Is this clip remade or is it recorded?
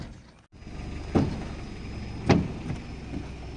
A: recorded